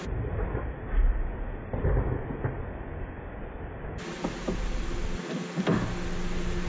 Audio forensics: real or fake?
real